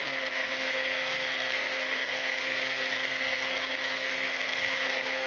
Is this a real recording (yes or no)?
no